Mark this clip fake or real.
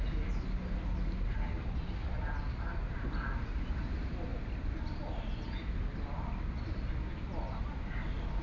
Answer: real